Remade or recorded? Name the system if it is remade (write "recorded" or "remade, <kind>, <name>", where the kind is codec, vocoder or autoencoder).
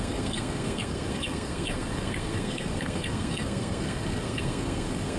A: remade, codec, SNAC